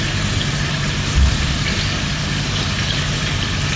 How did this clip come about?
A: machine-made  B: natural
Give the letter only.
B